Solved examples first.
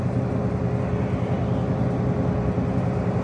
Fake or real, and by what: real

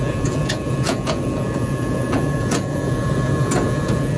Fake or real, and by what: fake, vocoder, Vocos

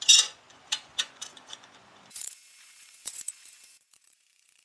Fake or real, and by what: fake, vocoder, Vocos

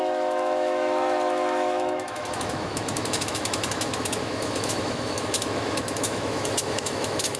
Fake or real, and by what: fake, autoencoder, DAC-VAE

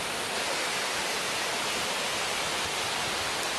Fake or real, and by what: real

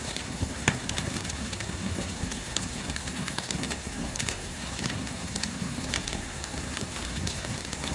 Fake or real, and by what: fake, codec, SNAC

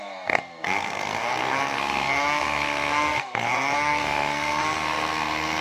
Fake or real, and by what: fake, codec, SNAC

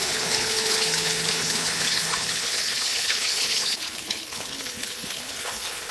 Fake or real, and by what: fake, codec, HILCodec